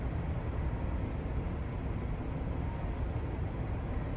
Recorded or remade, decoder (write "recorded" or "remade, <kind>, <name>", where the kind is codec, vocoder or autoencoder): recorded